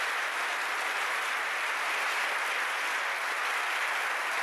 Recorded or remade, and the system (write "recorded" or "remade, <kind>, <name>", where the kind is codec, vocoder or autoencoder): recorded